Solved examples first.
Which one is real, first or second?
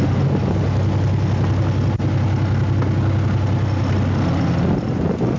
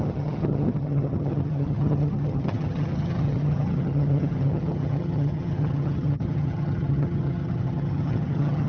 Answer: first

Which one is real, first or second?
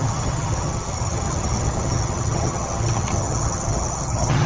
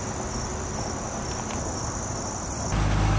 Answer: second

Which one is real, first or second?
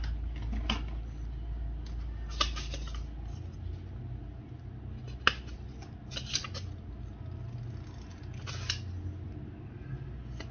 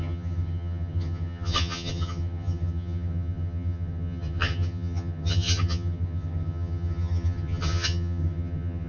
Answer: first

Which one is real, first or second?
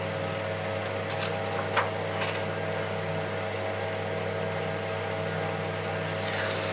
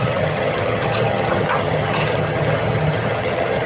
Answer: first